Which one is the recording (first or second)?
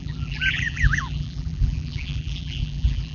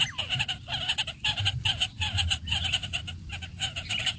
second